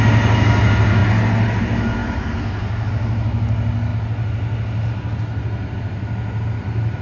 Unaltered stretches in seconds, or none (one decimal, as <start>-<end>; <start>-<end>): 0.0-7.0